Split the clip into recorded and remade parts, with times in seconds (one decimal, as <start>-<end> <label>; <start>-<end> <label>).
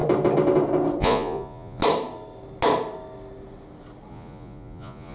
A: 0.0-1.0 recorded; 1.0-1.8 remade; 1.8-4.1 recorded; 4.1-5.1 remade